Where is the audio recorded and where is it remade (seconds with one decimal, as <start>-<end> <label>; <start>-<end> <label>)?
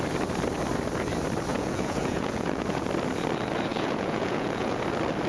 0.0-1.5 recorded; 1.5-2.9 remade; 2.9-3.7 recorded; 3.7-4.8 remade; 4.8-5.3 recorded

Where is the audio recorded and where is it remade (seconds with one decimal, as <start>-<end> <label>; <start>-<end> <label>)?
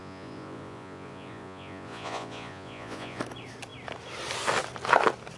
0.0-3.2 remade; 3.2-5.4 recorded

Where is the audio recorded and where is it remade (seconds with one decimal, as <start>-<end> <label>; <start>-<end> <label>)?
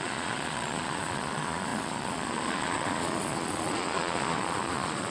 0.0-5.1 remade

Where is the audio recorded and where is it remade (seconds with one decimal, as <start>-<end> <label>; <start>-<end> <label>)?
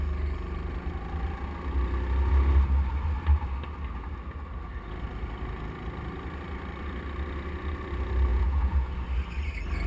0.0-8.3 recorded; 8.3-8.9 remade; 8.9-9.9 recorded